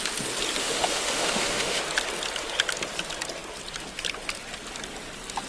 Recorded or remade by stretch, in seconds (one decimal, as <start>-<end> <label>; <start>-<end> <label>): 0.0-0.6 recorded; 0.6-1.8 remade; 1.8-5.5 recorded